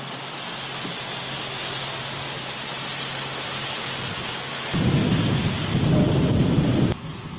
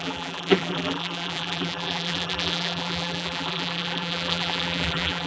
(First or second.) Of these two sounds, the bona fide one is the first